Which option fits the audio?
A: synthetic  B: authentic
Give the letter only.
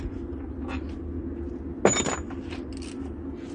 B